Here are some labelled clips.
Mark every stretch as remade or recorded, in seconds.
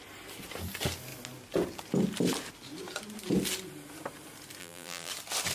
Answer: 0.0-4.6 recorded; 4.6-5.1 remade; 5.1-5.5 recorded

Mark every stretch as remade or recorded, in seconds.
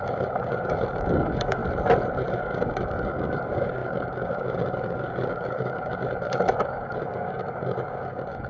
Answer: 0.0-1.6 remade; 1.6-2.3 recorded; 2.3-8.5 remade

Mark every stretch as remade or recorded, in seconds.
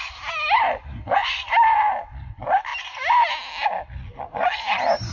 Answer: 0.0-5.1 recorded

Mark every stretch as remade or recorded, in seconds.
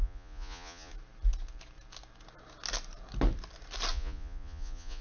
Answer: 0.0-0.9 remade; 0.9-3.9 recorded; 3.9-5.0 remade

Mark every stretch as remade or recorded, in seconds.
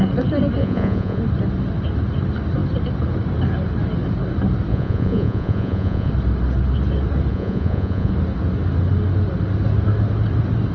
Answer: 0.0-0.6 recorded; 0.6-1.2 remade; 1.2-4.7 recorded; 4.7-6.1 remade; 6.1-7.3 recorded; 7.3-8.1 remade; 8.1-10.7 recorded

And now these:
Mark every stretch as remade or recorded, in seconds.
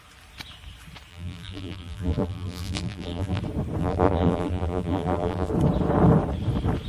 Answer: 0.0-1.1 recorded; 1.1-3.4 remade; 3.4-3.8 recorded; 3.8-5.5 remade; 5.5-6.9 recorded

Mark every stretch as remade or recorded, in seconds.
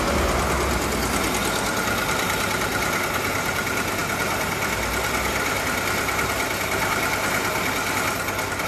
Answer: 0.0-8.7 recorded